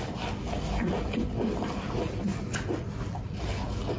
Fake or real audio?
real